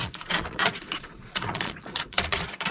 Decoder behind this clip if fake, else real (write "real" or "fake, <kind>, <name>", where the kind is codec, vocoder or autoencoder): fake, vocoder, Vocos